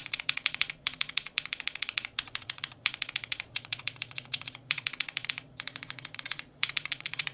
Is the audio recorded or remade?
remade